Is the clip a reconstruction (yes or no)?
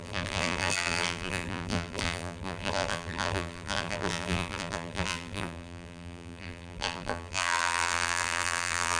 yes